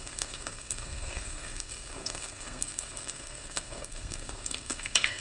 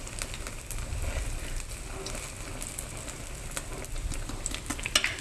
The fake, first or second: first